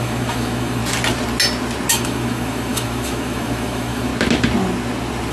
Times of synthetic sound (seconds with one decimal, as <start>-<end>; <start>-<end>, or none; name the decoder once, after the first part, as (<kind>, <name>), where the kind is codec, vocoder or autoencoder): 0.0-0.8 (autoencoder, DAC-VAE); 1.9-4.1